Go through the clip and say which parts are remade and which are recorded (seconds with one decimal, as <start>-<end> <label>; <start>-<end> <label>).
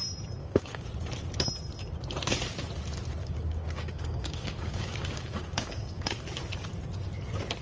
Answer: 0.0-0.4 recorded; 0.4-0.9 remade; 0.9-3.2 recorded; 3.2-6.2 remade; 6.2-7.6 recorded